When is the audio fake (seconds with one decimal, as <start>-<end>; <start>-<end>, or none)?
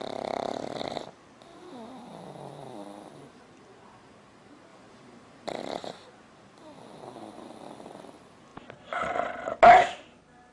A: none